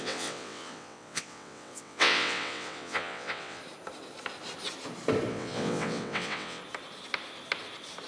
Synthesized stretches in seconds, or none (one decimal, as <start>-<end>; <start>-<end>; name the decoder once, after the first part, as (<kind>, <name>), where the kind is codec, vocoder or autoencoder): 0.0-3.6 (vocoder, WaveNeXt); 5.3-6.6